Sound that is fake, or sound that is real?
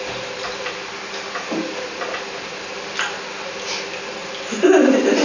real